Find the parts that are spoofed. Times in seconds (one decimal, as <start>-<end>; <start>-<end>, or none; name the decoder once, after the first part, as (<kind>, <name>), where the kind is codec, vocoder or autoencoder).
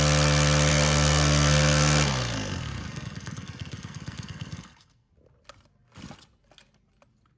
0.7-5.1 (codec, SNAC)